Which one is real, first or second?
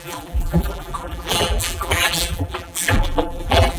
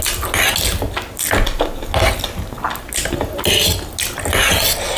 second